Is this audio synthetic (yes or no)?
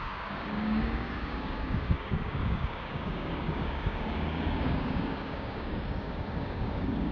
yes